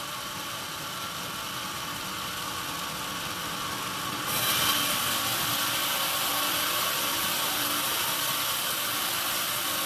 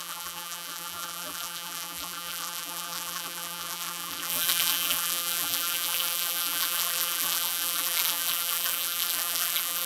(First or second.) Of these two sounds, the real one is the first